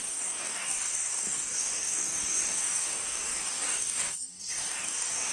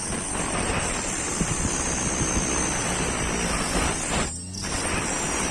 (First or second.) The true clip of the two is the second